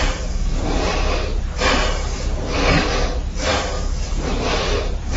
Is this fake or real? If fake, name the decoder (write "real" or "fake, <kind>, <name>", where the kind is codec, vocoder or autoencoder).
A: fake, vocoder, BigVGAN v2